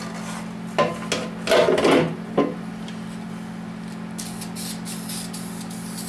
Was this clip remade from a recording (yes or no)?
no